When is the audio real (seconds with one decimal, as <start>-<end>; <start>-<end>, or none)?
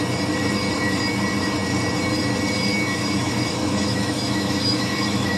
0.0-2.7